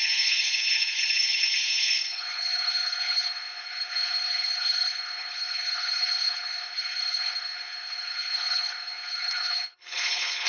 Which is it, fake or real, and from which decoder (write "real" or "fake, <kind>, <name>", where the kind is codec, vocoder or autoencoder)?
fake, codec, HILCodec